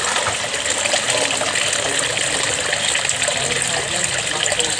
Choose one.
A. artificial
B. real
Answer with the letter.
B